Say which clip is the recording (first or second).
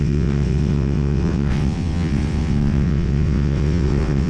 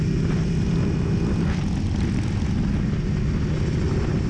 second